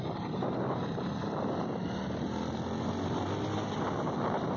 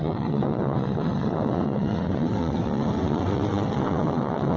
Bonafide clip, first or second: first